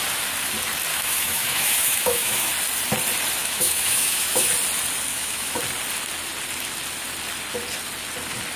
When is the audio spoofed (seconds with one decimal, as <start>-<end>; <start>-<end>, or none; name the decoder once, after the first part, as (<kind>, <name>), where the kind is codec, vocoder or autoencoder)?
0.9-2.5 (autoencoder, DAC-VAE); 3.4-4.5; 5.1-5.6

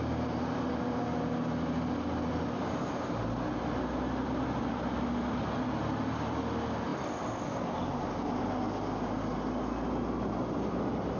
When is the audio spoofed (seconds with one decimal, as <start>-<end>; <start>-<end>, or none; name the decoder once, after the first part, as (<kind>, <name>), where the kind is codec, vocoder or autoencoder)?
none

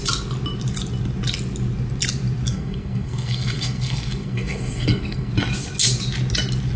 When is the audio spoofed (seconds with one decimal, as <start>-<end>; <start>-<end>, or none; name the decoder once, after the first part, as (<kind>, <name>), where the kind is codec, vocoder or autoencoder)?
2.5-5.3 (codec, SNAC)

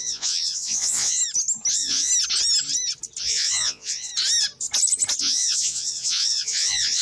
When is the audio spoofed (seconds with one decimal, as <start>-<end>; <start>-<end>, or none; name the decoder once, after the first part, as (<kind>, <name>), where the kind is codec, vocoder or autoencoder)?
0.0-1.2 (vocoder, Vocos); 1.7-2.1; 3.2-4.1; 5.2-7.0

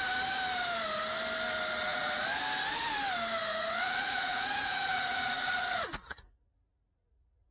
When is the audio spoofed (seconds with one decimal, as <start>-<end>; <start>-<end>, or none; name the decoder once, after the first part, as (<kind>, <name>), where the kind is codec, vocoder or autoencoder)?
1.9-2.4 (vocoder, Vocos); 3.5-7.5